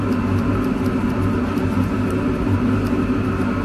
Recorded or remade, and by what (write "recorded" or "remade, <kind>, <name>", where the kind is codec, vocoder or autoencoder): recorded